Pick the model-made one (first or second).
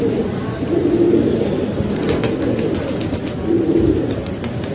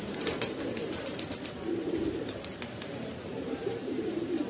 second